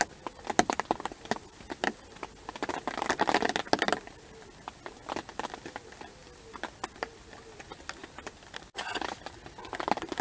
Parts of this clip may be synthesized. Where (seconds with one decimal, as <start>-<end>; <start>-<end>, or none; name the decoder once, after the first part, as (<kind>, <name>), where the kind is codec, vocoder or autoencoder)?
none